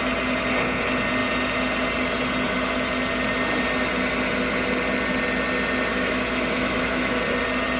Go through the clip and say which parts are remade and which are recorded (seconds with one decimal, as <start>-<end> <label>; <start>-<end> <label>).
0.0-5.9 recorded; 5.9-7.2 remade; 7.2-7.8 recorded